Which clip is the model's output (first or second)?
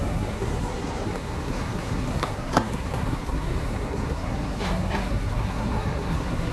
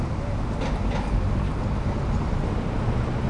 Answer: first